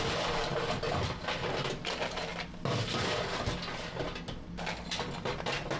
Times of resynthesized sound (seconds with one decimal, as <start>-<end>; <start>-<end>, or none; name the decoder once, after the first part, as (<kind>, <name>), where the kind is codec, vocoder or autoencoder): none